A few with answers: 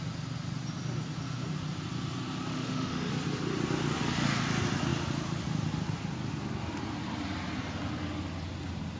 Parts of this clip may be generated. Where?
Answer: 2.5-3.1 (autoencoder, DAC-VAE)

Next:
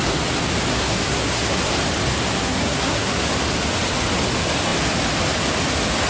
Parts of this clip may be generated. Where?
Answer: 0.7-1.7 (codec, SNAC); 2.1-3.2

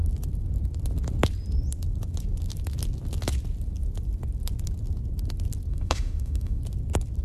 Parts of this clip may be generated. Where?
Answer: 5.7-6.6 (autoencoder, DAC-VAE)

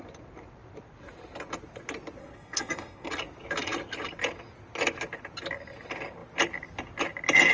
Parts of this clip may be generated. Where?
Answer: 2.2-3.1 (codec, SNAC)